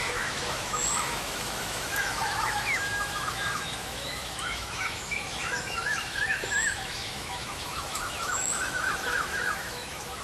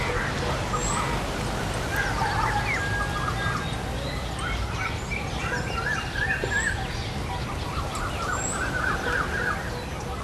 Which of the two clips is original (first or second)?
second